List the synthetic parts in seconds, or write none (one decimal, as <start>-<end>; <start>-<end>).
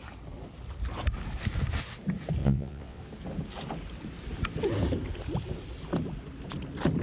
2.4-3.0